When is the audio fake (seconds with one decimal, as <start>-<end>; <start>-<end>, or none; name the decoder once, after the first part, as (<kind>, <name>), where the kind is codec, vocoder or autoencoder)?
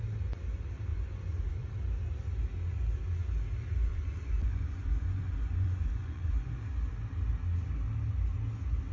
0.9-1.7 (vocoder, Vocos); 3.9-6.6